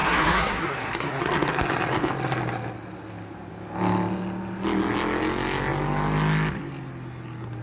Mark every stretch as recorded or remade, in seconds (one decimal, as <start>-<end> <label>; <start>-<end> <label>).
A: 0.0-1.2 remade; 1.2-7.6 recorded